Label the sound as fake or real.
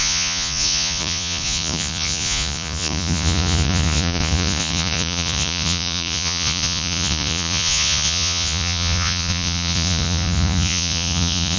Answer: fake